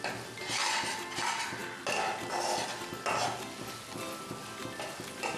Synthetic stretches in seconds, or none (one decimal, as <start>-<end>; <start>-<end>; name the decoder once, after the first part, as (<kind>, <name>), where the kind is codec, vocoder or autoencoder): none